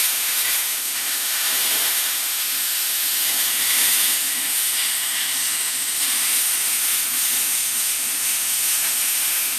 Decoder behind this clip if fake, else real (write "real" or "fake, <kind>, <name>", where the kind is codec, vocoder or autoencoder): fake, autoencoder, DAC-VAE